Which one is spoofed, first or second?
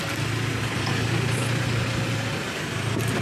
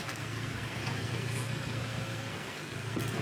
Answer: second